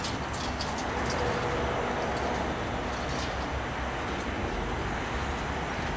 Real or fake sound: real